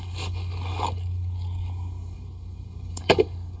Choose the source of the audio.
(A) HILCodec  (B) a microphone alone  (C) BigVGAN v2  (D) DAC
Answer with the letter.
D